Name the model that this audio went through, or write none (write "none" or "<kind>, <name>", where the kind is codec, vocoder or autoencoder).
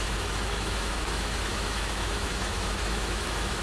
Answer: autoencoder, DAC-VAE